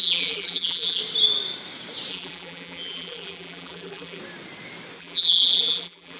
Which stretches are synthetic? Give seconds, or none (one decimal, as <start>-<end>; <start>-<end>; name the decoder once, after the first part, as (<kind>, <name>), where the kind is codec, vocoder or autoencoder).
0.0-1.0 (vocoder, BigVGAN v2); 2.1-4.2; 5.0-6.2